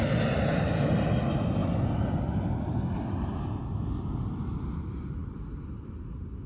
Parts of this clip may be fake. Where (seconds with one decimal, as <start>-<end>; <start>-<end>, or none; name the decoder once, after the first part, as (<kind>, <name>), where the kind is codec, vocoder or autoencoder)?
none